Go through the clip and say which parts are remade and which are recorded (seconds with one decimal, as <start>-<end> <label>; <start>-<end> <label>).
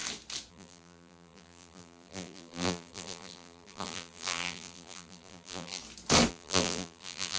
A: 0.0-0.5 recorded; 0.5-5.8 remade; 5.8-6.3 recorded; 6.3-7.4 remade